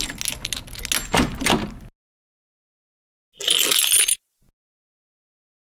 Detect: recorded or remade recorded